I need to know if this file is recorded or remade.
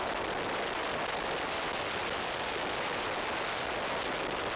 recorded